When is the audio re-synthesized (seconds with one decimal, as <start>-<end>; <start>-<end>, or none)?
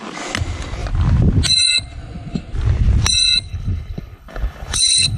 3.5-5.2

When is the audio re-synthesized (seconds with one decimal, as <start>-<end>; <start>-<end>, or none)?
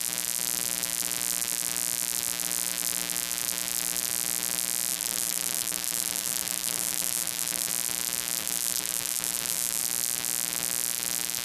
4.9-7.7; 8.4-9.8